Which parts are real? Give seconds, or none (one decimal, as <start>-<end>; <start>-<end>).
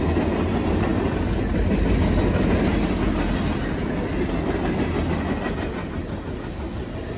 0.0-7.2